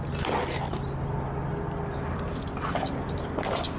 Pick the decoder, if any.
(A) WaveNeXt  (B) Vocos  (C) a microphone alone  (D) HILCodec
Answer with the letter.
C